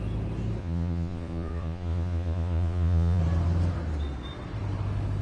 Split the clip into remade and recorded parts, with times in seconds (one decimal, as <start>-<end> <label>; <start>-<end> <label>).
0.0-0.6 recorded; 0.6-3.2 remade; 3.2-5.2 recorded